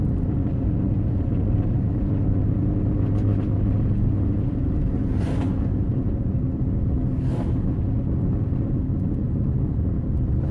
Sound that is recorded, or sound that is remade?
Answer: recorded